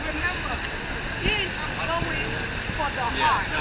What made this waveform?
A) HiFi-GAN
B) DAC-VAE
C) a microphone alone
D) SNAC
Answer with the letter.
C